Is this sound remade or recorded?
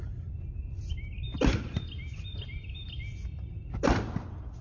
recorded